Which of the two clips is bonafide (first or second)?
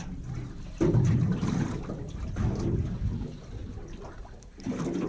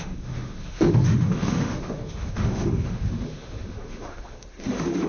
first